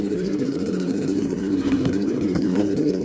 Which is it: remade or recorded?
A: remade